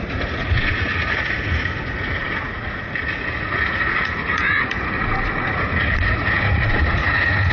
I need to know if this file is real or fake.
fake